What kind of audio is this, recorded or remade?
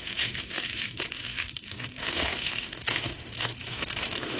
remade